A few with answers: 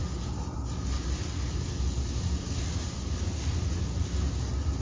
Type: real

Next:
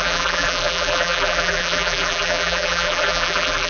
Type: fake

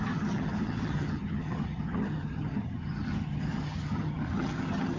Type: fake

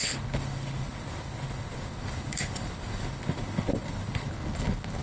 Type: fake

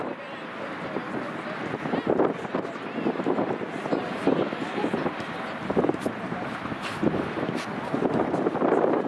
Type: real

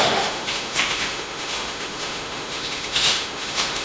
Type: fake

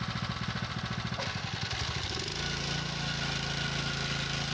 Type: real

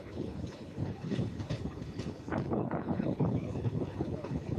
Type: fake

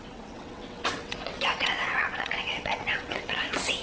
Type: fake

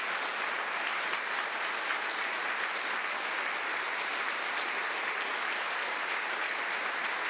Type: real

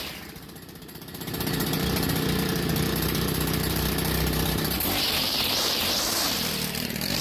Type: fake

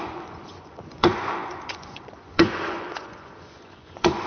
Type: fake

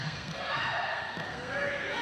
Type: fake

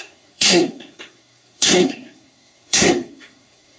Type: fake